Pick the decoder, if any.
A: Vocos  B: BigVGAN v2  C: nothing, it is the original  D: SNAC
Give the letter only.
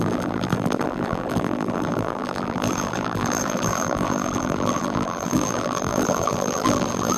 B